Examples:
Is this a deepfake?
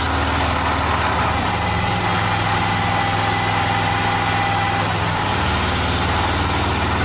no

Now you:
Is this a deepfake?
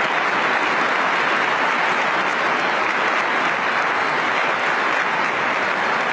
no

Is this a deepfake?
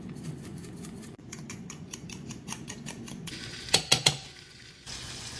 yes